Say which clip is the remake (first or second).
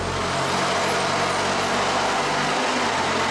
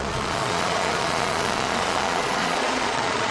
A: second